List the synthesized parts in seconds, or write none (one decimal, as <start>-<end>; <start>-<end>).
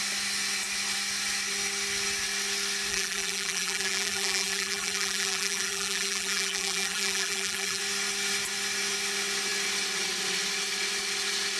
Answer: 2.9-7.8